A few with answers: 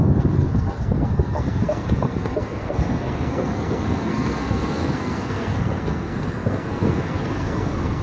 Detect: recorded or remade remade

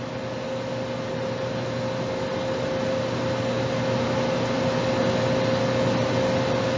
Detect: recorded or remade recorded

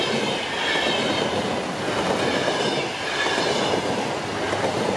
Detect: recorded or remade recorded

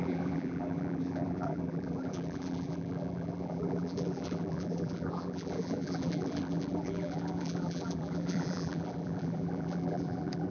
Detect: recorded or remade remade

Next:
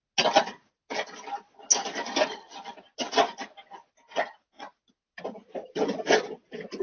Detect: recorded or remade recorded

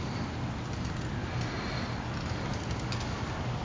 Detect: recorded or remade recorded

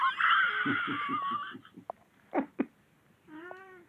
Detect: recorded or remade recorded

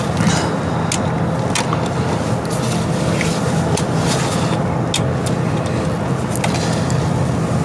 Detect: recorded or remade recorded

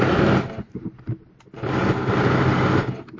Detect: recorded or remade recorded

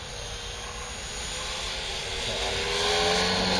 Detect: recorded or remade recorded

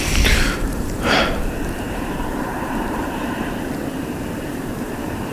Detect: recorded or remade remade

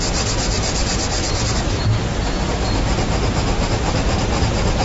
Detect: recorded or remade recorded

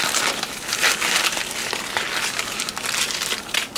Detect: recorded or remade recorded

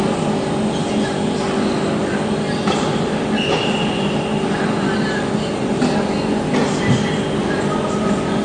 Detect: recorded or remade recorded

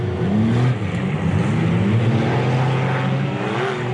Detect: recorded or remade recorded